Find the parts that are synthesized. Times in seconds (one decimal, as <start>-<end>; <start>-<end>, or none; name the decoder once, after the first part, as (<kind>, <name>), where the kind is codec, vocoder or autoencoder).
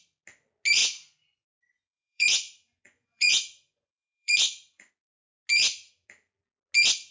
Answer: 0.8-4.9 (vocoder, Vocos)